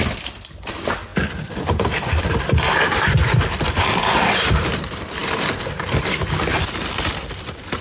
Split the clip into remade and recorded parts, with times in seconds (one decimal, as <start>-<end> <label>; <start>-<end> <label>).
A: 0.0-5.2 remade; 5.2-5.7 recorded; 5.7-6.5 remade; 6.5-7.0 recorded; 7.0-7.8 remade